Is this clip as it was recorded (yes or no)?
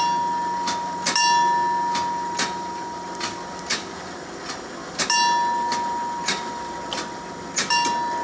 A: yes